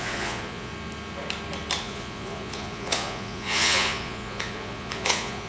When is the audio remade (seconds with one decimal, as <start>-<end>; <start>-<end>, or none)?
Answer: 0.0-0.7; 1.8-5.5